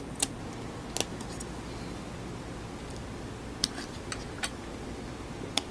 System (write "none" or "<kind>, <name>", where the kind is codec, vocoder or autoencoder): none